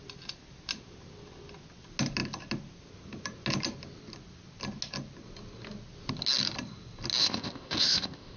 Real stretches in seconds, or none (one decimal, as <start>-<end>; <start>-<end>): 0.0-7.2